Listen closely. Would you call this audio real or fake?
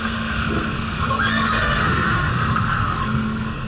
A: fake